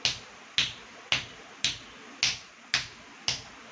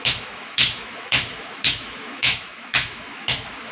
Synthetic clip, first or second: second